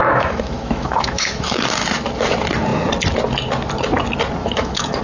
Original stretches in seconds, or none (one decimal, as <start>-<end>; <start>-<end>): 1.6-4.4

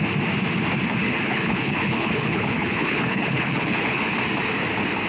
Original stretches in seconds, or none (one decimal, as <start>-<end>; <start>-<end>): 0.0-1.0; 4.1-5.1

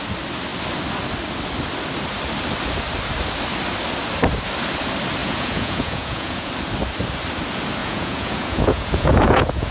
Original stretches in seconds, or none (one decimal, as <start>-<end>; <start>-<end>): 0.0-5.2; 6.5-7.8

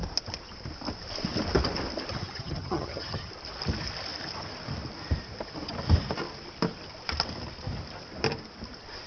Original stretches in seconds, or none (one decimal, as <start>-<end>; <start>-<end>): 0.0-2.1; 3.3-9.1

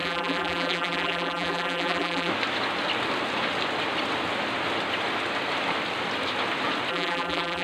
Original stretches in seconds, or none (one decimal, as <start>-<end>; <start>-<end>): 2.3-6.9

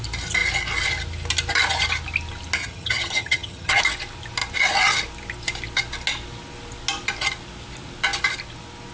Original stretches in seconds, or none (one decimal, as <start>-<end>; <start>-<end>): 0.0-2.6; 3.8-8.9